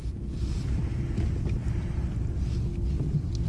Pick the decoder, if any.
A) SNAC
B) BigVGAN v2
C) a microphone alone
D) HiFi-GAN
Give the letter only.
C